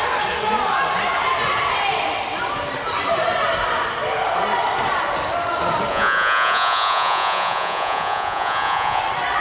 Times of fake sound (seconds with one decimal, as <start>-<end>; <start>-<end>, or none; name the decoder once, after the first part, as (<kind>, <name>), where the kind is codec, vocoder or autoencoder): 5.9-9.0 (vocoder, Vocos)